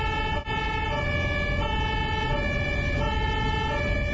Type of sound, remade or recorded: recorded